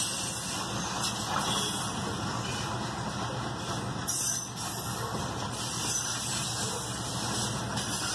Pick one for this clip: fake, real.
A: real